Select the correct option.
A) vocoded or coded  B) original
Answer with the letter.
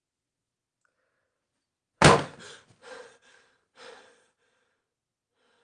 B